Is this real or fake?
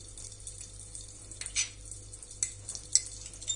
real